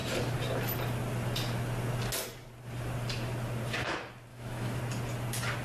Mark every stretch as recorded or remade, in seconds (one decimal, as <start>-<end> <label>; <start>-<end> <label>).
0.0-4.3 recorded; 4.3-4.8 remade; 4.8-5.6 recorded